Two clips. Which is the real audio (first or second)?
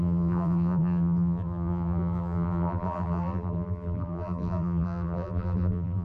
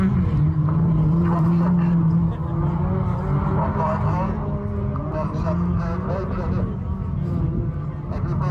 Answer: second